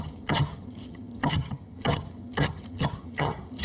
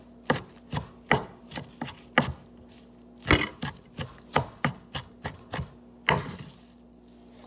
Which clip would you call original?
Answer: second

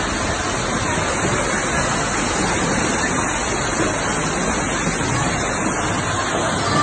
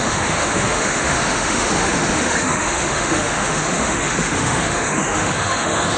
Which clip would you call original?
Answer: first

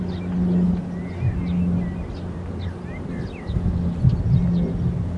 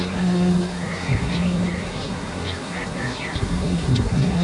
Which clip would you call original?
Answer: first